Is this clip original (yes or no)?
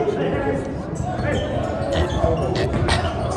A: yes